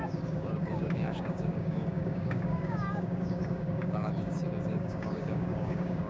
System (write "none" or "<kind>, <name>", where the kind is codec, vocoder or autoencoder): codec, DAC